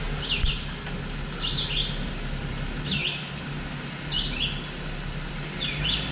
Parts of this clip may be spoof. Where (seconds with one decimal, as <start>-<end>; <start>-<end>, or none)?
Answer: none